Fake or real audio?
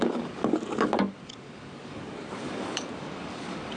fake